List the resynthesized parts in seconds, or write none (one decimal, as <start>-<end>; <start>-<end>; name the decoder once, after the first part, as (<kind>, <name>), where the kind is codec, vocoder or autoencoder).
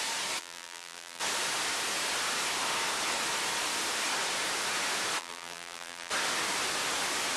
0.4-1.2 (vocoder, BigVGAN v2); 5.2-6.1